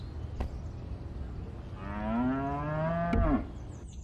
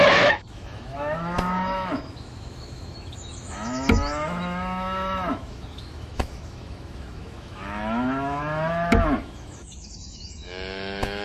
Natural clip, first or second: first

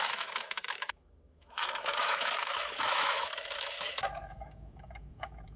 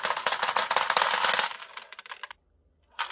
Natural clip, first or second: second